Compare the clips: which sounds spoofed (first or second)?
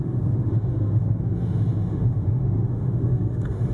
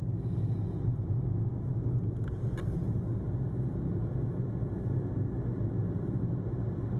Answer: first